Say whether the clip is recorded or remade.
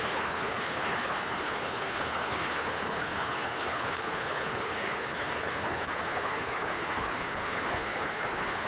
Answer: remade